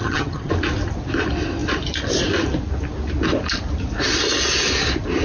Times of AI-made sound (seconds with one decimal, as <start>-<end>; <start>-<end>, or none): 0.0-0.5

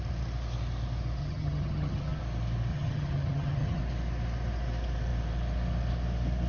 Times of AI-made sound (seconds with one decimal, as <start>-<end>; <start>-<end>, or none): 1.2-2.2; 2.7-3.8

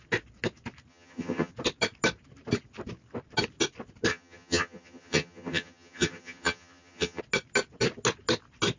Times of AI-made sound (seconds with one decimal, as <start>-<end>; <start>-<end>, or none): 0.9-1.5; 4.1-7.2

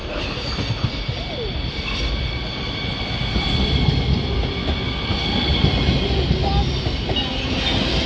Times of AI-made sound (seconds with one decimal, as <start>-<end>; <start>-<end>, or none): none

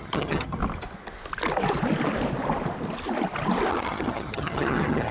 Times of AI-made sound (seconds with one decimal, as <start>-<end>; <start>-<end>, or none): 0.0-0.6; 3.7-5.1

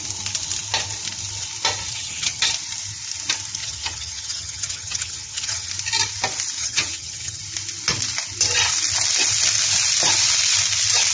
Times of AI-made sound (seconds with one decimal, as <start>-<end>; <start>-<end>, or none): 1.9-2.5; 3.6-5.7; 6.6-7.4

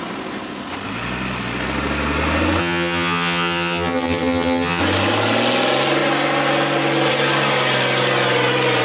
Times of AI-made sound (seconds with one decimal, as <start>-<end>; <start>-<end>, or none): 2.6-4.8

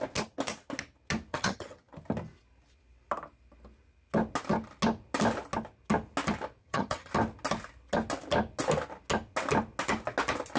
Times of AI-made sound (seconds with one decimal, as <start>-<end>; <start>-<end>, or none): 1.3-1.9; 6.6-7.1